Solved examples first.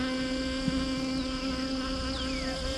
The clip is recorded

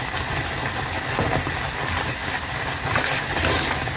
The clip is recorded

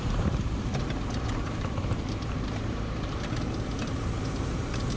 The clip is remade